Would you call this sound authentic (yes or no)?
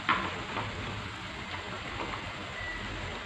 yes